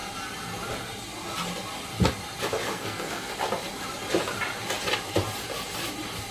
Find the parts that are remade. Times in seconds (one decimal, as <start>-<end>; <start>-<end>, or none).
2.7-3.3